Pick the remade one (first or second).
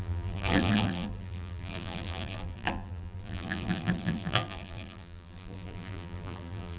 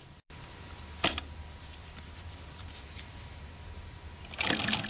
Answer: first